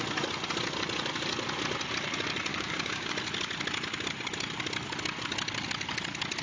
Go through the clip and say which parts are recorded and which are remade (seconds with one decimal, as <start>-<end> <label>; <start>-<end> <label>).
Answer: 0.0-2.5 recorded; 2.5-3.1 remade; 3.1-6.4 recorded